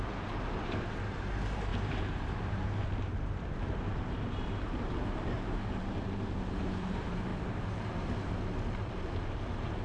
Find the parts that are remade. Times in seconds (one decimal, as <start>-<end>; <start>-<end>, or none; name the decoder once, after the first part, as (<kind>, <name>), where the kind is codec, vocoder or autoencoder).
0.0-7.3 (vocoder, BigVGAN v2); 8.9-9.8